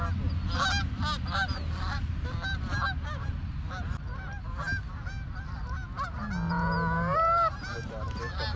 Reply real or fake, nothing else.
real